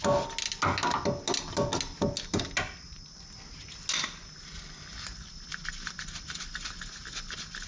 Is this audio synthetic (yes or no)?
no